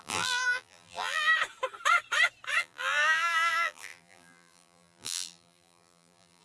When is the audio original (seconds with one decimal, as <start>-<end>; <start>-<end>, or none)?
1.3-2.6